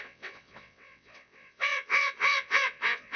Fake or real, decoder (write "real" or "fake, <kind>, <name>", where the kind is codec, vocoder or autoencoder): fake, vocoder, WaveNeXt